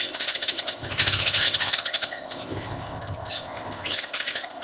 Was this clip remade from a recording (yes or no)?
yes